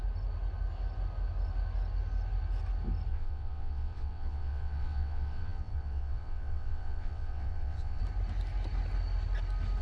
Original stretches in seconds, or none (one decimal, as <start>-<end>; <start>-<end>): 0.0-3.1; 8.0-9.8